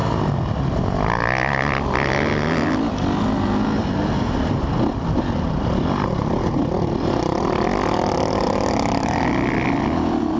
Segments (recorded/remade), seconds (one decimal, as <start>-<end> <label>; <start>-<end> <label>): 0.0-10.4 recorded